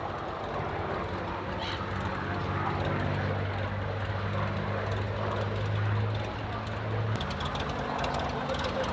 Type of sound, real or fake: real